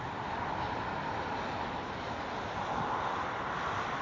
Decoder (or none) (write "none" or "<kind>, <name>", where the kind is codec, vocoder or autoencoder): none